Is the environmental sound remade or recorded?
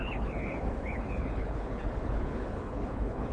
remade